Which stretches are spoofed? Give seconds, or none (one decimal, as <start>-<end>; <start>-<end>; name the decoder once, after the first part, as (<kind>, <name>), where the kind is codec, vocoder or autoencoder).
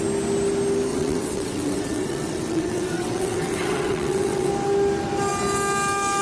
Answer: 0.9-4.5 (vocoder, WaveNeXt)